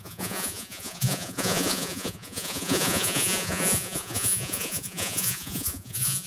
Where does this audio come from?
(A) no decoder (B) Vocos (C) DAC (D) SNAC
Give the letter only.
B